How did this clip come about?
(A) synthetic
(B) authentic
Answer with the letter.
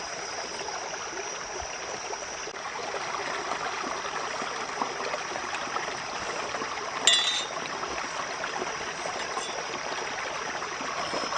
B